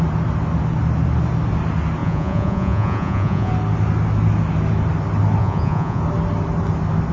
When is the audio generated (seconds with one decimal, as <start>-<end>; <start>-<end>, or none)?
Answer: 2.0-3.5; 5.4-6.0